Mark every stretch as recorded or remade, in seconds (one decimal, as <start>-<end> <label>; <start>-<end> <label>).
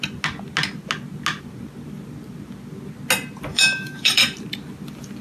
0.0-3.5 recorded; 3.5-4.2 remade; 4.2-5.2 recorded